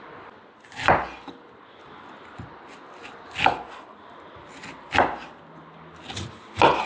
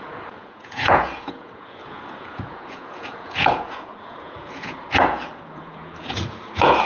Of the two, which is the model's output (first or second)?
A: second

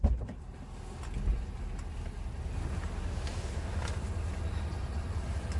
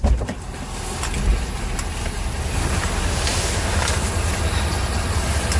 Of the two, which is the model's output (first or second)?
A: second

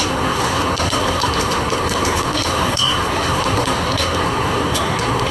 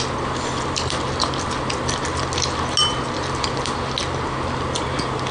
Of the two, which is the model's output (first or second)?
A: first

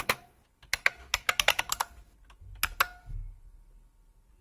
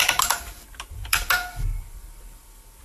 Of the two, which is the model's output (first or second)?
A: second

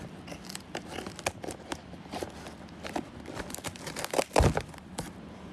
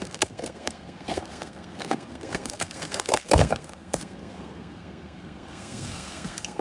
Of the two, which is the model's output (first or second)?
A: second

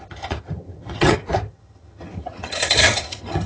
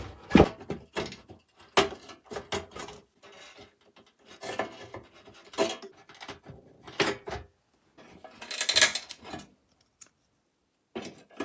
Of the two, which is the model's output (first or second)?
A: first